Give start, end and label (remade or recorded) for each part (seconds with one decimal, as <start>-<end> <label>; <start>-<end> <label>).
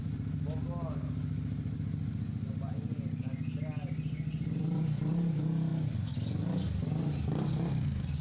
0.0-8.2 recorded